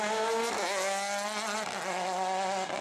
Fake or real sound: real